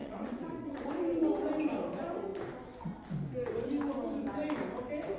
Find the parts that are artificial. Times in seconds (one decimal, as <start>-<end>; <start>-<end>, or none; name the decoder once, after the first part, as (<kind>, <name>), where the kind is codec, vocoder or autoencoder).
0.0-0.9 (vocoder, WaveNeXt)